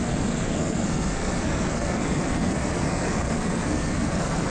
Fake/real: fake